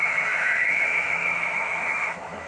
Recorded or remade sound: remade